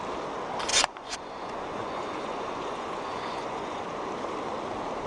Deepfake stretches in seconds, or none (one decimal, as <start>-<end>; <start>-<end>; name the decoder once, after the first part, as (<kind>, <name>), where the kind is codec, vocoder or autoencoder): 0.7-3.8 (vocoder, Vocos)